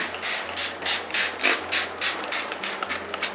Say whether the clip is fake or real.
real